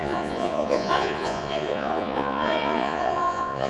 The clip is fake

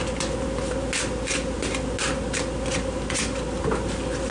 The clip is real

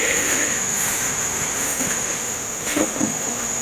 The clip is fake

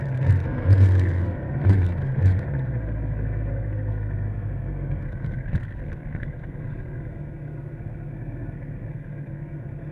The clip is fake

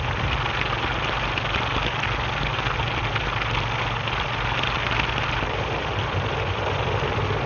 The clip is real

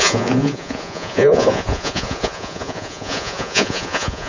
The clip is fake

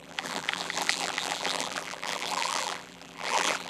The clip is fake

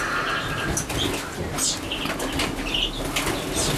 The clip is real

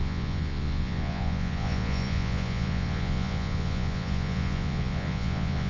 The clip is fake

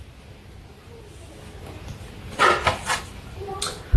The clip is real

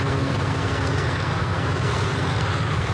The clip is fake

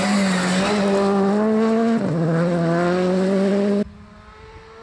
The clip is real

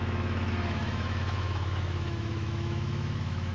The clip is fake